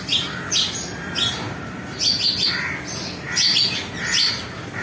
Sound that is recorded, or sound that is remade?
recorded